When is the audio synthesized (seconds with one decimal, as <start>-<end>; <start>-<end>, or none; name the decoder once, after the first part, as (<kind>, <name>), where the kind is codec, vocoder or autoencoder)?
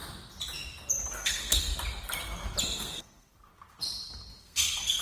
1.1-1.7 (codec, SNAC); 2.6-3.5; 4.4-5.0